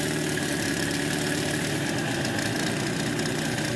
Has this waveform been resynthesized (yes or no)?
no